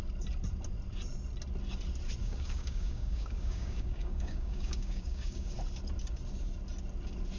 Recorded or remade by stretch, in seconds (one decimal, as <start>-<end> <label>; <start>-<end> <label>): 0.0-2.2 recorded; 2.2-5.5 remade; 5.5-7.4 recorded

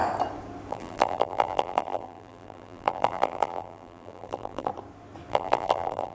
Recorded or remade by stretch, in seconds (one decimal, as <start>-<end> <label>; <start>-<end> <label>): 0.0-0.7 recorded; 0.7-4.7 remade; 4.7-5.3 recorded; 5.3-6.1 remade

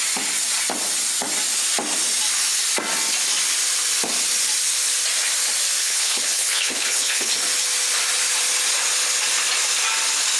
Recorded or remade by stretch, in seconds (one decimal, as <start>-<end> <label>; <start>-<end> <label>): 0.0-5.8 recorded; 5.8-7.3 remade; 7.3-10.4 recorded